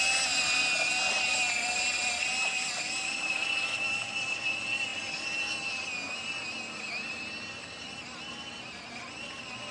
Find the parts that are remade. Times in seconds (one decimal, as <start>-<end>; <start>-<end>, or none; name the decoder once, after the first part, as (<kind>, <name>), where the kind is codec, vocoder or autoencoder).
1.3-3.3 (vocoder, BigVGAN v2)